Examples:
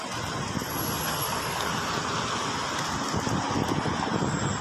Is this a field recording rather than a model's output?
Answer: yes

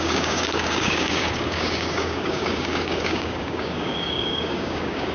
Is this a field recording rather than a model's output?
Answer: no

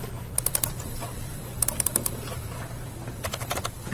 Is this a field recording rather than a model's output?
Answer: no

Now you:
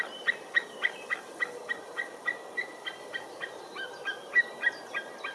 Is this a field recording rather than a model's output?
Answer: yes